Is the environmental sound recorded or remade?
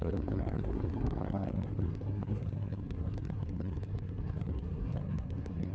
remade